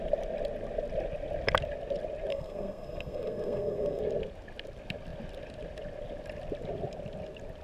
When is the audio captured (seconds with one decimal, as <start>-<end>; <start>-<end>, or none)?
0.0-2.3; 4.0-7.6